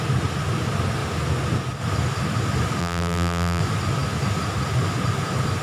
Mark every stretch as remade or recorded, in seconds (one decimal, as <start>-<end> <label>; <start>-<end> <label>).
0.0-2.8 recorded; 2.8-3.6 remade; 3.6-5.6 recorded